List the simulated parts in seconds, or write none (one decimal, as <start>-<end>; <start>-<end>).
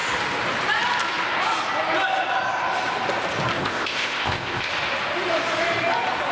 3.6-4.7